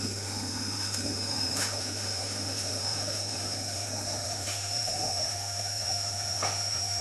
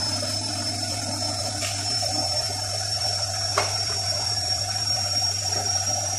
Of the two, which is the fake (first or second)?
first